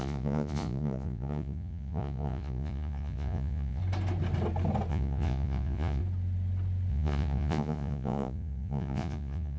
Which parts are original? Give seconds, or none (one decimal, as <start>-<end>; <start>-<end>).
3.8-4.9; 6.0-6.9